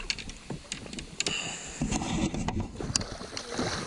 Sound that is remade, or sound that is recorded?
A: recorded